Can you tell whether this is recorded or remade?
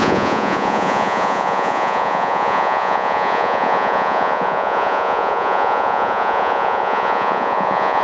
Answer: remade